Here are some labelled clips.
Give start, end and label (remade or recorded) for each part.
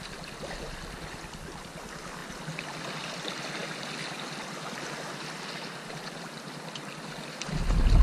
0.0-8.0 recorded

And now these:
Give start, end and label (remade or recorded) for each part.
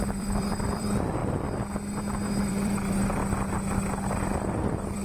0.0-1.2 remade; 1.2-2.4 recorded; 2.4-3.2 remade; 3.2-4.6 recorded; 4.6-5.0 remade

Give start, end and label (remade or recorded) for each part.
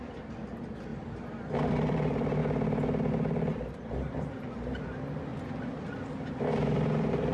0.0-2.4 remade; 2.4-3.1 recorded; 3.1-5.3 remade; 5.3-6.3 recorded; 6.3-7.3 remade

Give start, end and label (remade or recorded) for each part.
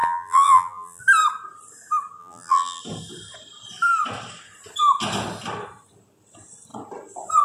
0.0-1.0 remade; 1.0-2.2 recorded; 2.2-2.8 remade; 2.8-7.4 recorded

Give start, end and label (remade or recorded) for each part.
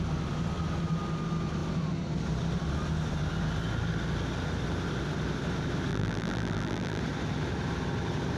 0.0-5.9 recorded; 5.9-7.0 remade; 7.0-8.4 recorded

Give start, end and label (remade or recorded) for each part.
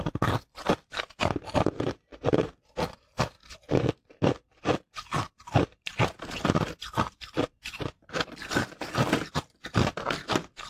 0.0-10.7 remade